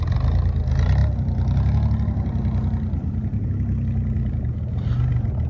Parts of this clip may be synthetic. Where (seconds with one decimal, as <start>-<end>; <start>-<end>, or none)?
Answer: none

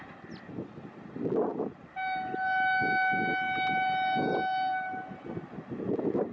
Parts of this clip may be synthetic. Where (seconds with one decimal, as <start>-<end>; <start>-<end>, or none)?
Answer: none